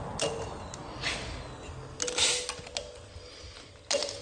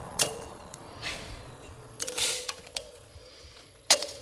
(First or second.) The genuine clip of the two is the first